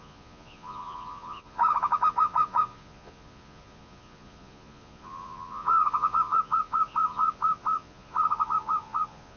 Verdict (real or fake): fake